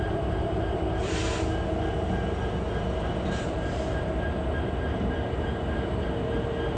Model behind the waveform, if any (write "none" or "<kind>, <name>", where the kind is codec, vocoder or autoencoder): none